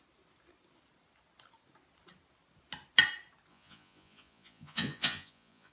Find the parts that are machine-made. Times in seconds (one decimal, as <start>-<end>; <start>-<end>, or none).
3.5-5.7